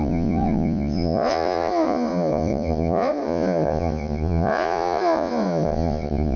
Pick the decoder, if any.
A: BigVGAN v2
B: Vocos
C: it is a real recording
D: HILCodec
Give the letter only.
B